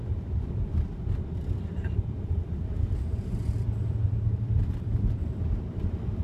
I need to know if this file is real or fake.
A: fake